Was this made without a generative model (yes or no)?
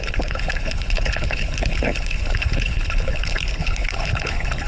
no